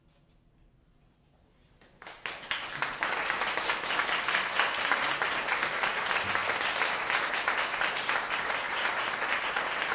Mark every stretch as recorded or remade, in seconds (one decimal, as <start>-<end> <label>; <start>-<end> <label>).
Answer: 0.0-9.9 recorded